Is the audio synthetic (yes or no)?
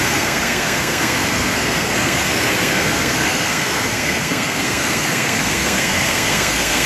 yes